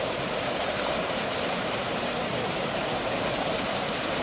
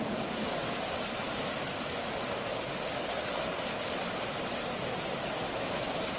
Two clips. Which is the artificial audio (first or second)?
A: first